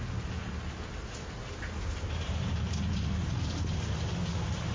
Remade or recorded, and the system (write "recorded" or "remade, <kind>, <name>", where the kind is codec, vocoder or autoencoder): recorded